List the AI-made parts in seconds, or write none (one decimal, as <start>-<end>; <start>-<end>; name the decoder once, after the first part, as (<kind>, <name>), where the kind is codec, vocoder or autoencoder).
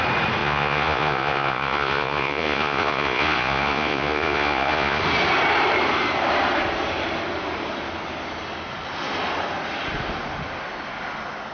0.4-5.0 (vocoder, Vocos)